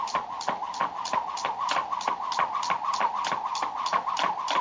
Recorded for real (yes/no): yes